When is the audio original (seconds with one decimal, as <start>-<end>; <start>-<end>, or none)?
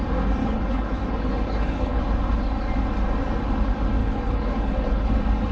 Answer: 0.0-0.4; 2.0-4.0; 5.1-5.5